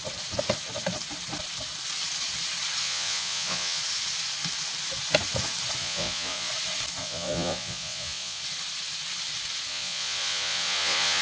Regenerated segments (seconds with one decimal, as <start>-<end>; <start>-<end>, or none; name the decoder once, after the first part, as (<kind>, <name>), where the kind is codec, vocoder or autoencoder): 2.8-3.8 (vocoder, Vocos); 5.8-6.5; 7.0-8.4; 9.7-11.2